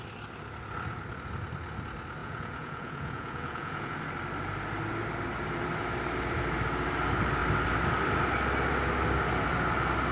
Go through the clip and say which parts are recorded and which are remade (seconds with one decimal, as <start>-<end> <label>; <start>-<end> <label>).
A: 0.0-2.2 recorded; 2.2-4.0 remade; 4.0-10.1 recorded